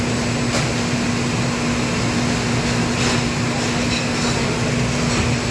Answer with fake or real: real